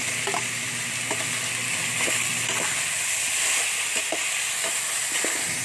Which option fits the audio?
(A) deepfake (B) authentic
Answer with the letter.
B